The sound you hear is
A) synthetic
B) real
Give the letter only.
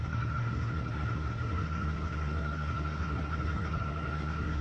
A